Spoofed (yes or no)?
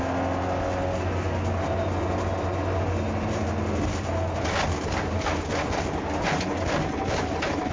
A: no